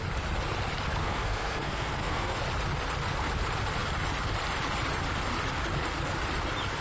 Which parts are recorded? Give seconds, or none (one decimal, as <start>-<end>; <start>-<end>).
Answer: 0.0-1.0; 2.4-6.8